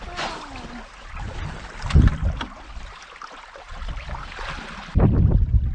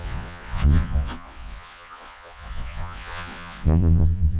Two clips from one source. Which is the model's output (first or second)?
second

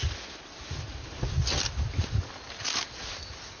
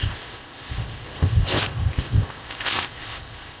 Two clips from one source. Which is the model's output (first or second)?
second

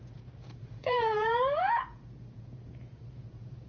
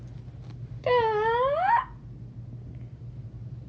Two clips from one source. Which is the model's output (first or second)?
first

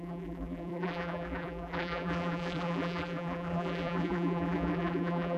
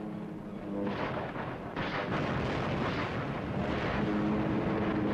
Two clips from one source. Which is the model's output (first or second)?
first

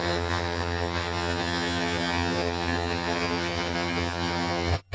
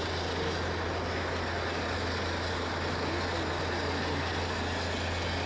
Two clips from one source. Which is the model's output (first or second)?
first